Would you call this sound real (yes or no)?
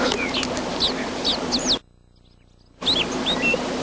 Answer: yes